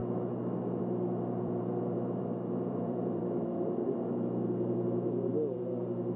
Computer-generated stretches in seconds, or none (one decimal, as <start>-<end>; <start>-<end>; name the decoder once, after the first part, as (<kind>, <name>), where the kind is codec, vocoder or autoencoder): 0.8-6.2 (vocoder, BigVGAN v2)